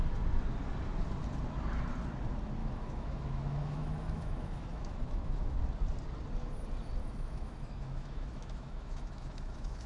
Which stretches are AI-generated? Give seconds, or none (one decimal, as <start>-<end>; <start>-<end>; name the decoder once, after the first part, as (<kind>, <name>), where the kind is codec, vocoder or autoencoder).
2.6-5.6 (autoencoder, DAC-VAE); 7.0-9.9